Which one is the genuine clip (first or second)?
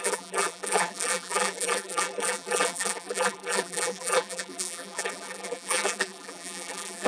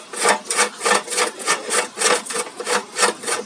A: second